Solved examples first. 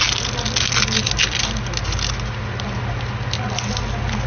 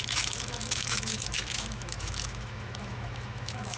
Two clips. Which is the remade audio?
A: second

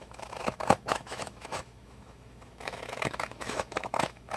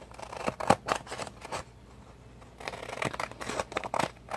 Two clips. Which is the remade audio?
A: first